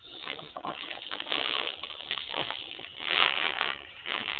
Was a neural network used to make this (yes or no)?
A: yes